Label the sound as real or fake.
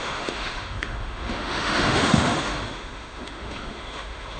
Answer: fake